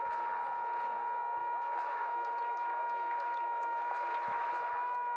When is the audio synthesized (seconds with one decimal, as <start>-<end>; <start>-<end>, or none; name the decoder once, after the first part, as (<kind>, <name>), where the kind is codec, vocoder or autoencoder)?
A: 1.4-4.5 (autoencoder, DAC-VAE)